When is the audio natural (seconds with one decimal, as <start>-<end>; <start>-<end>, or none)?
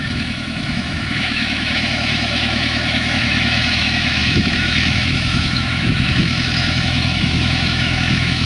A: none